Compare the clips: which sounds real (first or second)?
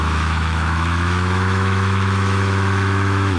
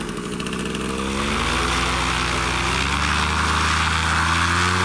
second